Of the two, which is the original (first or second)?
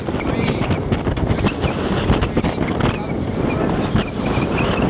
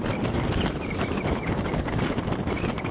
first